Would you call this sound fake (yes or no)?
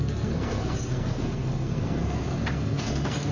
yes